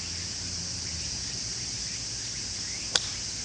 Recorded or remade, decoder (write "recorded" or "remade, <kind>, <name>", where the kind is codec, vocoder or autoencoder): recorded